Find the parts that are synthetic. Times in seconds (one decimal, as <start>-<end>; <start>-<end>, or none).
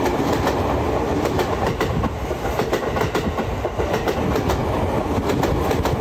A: none